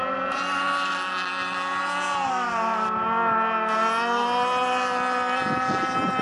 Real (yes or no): yes